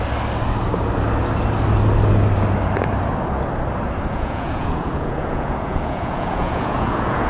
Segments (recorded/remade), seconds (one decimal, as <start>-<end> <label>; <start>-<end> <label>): 0.0-4.1 recorded; 4.1-7.3 remade